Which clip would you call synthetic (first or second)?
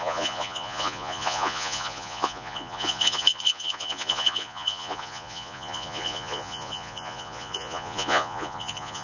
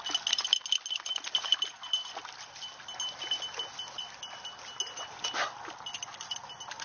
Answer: first